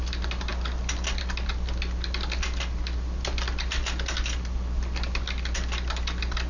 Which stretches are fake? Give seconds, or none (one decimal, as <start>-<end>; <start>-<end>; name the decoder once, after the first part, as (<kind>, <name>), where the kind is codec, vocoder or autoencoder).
none